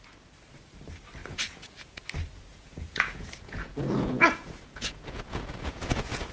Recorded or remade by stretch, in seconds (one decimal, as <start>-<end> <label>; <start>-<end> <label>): 0.0-1.2 recorded; 1.2-2.0 remade; 2.0-2.5 recorded; 2.5-6.3 remade